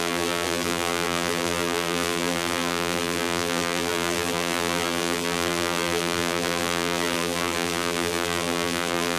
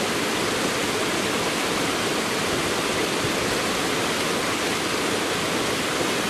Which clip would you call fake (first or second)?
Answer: first